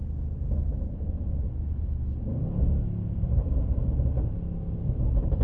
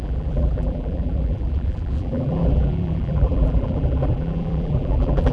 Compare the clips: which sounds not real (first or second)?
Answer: second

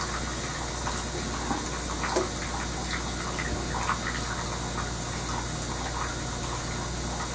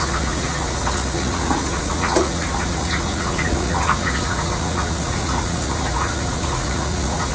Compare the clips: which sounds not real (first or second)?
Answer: second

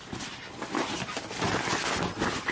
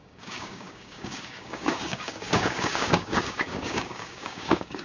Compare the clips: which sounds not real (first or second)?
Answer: second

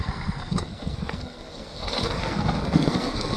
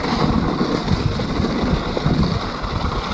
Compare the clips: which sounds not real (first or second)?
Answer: first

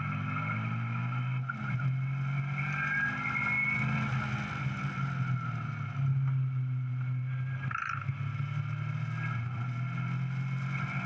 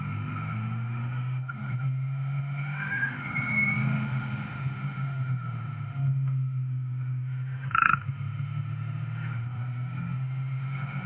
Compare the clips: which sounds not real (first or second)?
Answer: second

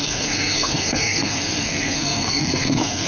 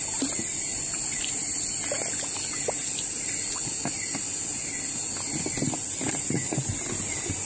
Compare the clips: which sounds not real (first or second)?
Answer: first